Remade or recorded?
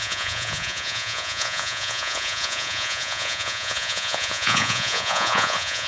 remade